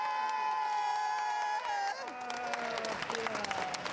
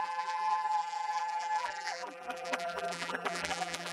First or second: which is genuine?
first